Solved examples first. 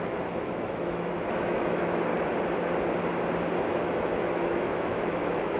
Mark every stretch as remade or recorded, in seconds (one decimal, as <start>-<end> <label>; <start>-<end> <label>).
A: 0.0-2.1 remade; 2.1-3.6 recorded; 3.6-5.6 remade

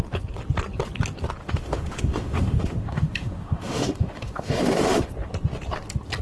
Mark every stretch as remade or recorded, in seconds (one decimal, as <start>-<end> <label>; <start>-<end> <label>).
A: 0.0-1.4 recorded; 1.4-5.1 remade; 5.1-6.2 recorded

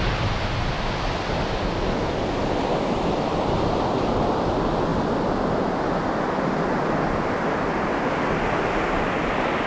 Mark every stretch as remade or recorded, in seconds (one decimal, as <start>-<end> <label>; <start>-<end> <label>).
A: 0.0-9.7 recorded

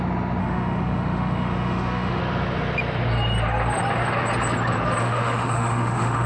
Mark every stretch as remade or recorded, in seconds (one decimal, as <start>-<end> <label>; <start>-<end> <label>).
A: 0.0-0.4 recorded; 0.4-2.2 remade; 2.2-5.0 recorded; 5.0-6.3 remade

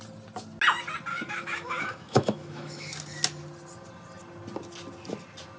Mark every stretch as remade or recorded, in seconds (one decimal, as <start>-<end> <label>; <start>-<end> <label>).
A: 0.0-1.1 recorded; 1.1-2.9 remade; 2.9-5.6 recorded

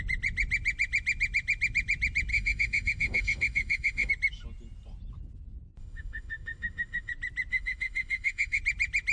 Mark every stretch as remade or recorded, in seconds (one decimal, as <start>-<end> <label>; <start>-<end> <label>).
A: 0.0-2.3 recorded; 2.3-4.1 remade; 4.1-5.8 recorded; 5.8-7.1 remade; 7.1-7.5 recorded; 7.5-8.6 remade; 8.6-9.1 recorded

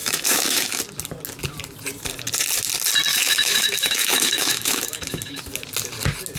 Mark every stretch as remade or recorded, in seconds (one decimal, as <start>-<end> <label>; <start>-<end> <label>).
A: 0.0-0.8 remade; 0.8-3.1 recorded; 3.1-5.4 remade; 5.4-6.4 recorded

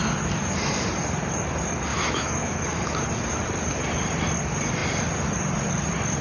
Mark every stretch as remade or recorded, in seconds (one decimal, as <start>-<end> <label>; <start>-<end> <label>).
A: 0.0-1.9 recorded; 1.9-2.6 remade; 2.6-6.2 recorded